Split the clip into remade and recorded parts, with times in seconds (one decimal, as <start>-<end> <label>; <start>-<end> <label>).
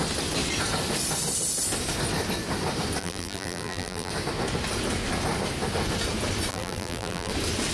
0.0-3.0 recorded; 3.0-4.1 remade; 4.1-6.5 recorded; 6.5-7.3 remade; 7.3-7.7 recorded